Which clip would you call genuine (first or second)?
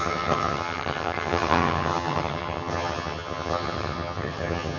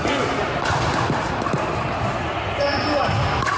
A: second